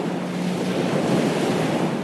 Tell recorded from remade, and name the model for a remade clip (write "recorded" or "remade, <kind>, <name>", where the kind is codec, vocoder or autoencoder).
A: recorded